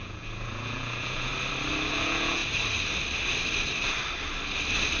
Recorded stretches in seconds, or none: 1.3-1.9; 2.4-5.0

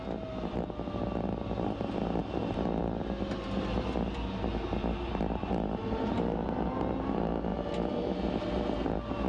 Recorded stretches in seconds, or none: 0.0-9.3

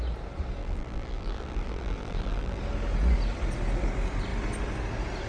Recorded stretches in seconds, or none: 0.0-0.6; 2.6-5.3